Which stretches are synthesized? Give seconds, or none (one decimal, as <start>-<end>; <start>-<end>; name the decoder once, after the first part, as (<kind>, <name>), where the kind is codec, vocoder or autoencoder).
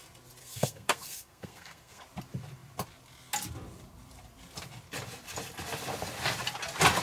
0.4-2.0 (codec, SNAC)